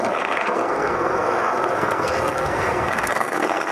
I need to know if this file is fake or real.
fake